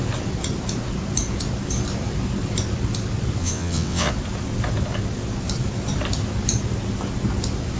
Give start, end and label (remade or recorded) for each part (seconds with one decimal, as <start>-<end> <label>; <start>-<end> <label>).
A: 0.0-3.4 recorded; 3.4-4.1 remade; 4.1-7.8 recorded